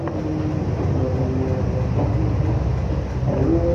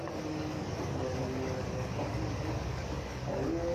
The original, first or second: first